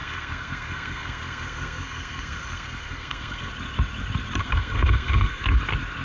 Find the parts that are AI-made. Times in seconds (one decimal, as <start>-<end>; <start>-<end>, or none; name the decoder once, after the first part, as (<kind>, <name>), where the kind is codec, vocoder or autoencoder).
0.0-3.5 (codec, SNAC); 4.4-5.6